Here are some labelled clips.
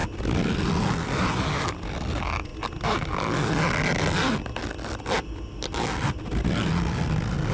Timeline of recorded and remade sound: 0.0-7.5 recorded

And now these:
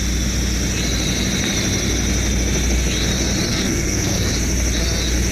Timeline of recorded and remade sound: 0.0-3.5 recorded; 3.5-4.3 remade; 4.3-5.3 recorded

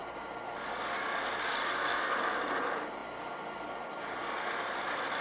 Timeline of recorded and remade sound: 0.0-5.2 recorded

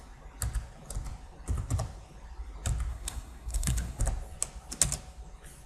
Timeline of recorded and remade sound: 0.0-2.9 recorded; 2.9-4.0 remade; 4.0-5.7 recorded